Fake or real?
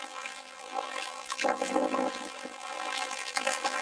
fake